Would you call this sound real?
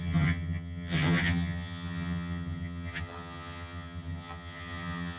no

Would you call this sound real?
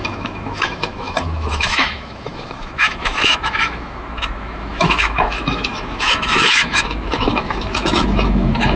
no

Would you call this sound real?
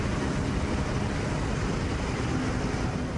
yes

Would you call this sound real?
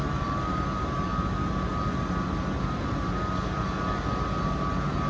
yes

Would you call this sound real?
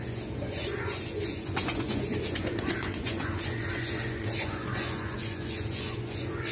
no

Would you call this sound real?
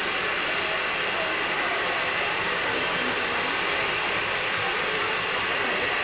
yes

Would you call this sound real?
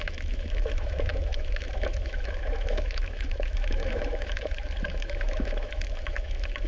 no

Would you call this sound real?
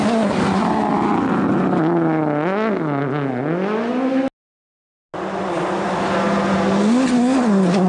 yes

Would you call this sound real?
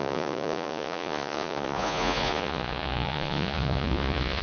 no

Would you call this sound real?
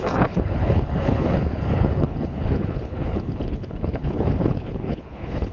no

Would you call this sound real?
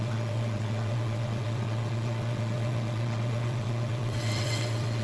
no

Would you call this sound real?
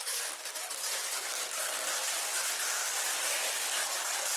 no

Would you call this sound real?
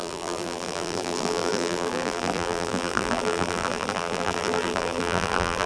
no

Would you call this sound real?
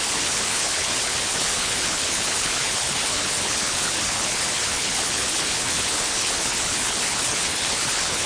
no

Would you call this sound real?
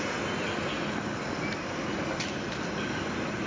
yes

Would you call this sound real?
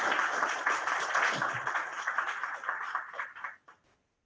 yes